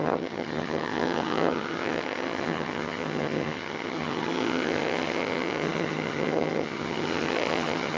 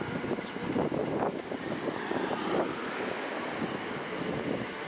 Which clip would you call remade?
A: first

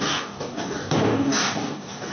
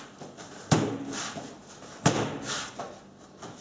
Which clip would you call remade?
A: first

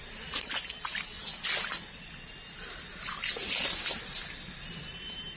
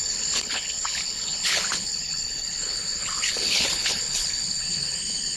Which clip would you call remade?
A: second